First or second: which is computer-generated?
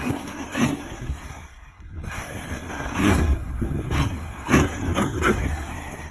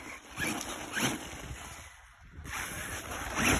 first